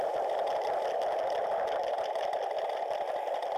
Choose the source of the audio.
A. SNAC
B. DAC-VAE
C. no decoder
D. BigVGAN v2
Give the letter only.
C